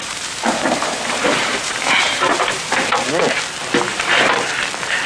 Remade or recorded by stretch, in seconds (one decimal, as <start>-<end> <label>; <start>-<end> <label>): 0.0-3.1 remade; 3.1-3.9 recorded; 3.9-4.5 remade; 4.5-5.1 recorded